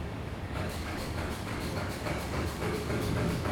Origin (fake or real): fake